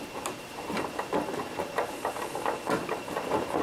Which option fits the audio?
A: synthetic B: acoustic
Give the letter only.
A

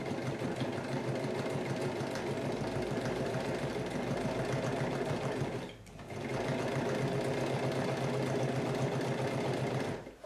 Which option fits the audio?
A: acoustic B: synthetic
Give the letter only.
A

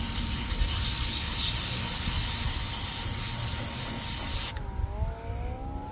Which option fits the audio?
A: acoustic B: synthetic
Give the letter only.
A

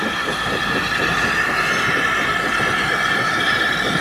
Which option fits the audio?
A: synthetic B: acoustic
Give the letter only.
B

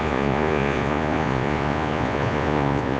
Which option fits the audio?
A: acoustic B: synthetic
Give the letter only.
B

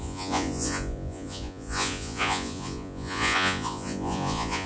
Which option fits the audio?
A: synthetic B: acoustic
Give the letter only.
A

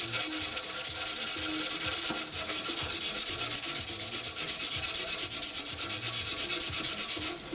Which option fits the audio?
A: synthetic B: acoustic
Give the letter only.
B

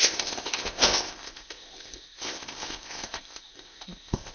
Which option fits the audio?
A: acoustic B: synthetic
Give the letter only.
B